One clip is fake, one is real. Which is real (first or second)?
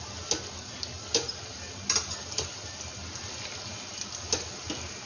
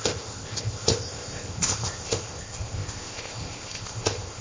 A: first